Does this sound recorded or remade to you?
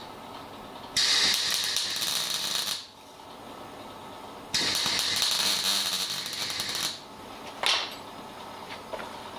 recorded